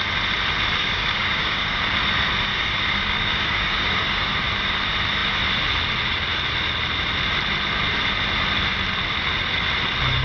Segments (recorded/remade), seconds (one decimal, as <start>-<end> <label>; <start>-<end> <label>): 0.0-0.8 recorded; 0.8-1.8 remade; 1.8-2.5 recorded; 2.5-4.3 remade; 4.3-10.2 recorded